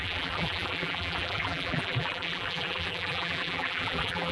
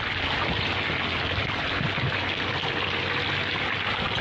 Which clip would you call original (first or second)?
second